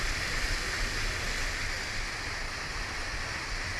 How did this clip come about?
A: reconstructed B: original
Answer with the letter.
B